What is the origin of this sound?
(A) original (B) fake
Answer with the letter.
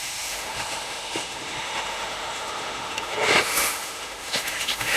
B